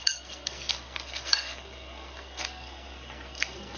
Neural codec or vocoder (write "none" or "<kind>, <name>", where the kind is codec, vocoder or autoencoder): codec, SNAC